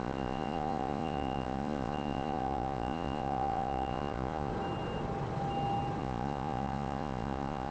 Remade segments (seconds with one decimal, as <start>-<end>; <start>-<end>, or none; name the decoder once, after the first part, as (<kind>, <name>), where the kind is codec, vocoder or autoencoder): 0.0-4.5 (vocoder, Vocos); 6.0-7.7